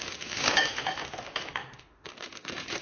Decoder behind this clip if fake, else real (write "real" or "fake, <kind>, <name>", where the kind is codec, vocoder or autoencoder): fake, autoencoder, DAC-VAE